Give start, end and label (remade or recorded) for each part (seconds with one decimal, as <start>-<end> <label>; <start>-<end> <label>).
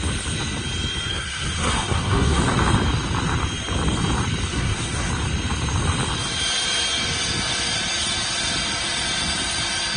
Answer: 0.0-1.1 recorded; 1.1-2.4 remade; 2.4-4.5 recorded; 4.5-5.1 remade; 5.1-10.0 recorded